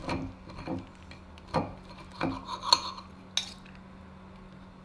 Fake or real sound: real